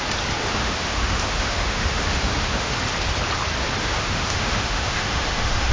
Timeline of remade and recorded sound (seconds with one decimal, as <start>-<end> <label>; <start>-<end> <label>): 0.0-0.4 recorded; 0.4-2.7 remade; 2.7-3.8 recorded; 3.8-5.7 remade